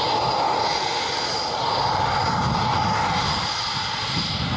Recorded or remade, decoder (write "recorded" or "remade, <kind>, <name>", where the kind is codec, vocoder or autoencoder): recorded